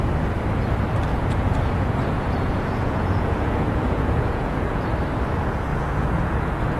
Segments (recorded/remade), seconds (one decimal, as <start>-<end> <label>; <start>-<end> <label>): 0.0-1.1 recorded; 1.1-4.9 remade; 4.9-5.7 recorded; 5.7-6.8 remade

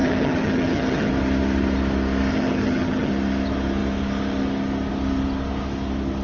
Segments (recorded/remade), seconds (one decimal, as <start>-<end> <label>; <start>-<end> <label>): 0.0-1.1 remade; 1.1-2.3 recorded; 2.3-3.1 remade; 3.1-6.2 recorded

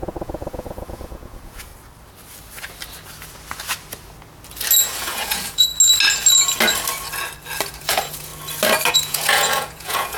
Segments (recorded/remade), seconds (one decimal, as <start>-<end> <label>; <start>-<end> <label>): 0.0-1.7 remade; 1.7-5.0 recorded; 5.0-5.7 remade; 5.7-7.8 recorded; 7.8-8.3 remade; 8.3-8.9 recorded; 8.9-10.2 remade

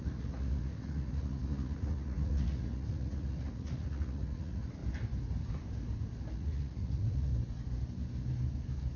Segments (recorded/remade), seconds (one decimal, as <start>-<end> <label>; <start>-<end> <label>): 0.0-4.8 remade; 4.8-6.3 recorded; 6.3-7.3 remade; 7.3-9.0 recorded